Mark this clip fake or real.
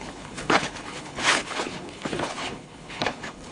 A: fake